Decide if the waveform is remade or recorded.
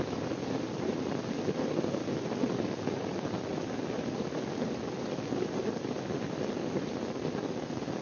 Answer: recorded